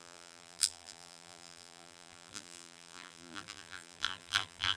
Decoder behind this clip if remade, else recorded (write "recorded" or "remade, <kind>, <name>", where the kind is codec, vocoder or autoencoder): remade, vocoder, BigVGAN v2